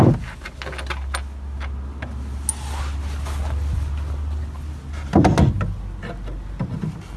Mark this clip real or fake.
real